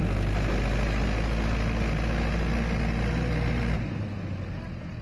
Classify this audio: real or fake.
real